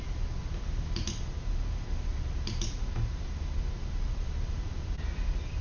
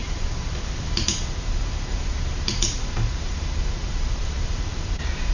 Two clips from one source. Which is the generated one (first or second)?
second